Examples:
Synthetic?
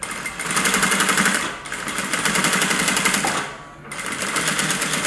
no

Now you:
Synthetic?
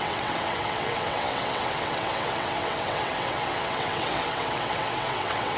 yes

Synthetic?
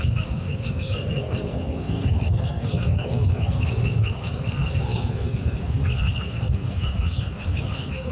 yes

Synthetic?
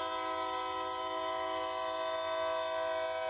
no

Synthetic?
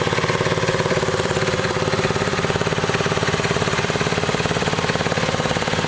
yes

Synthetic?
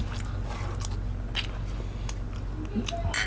no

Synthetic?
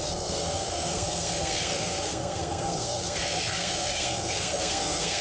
yes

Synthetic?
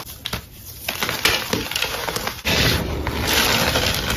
no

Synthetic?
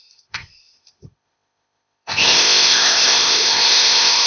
yes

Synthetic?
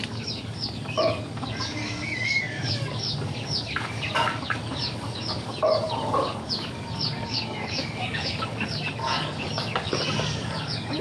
yes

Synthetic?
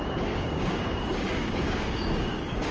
yes